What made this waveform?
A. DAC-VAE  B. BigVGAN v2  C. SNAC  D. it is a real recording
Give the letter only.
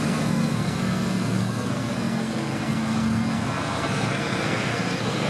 C